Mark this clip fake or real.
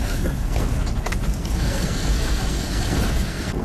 fake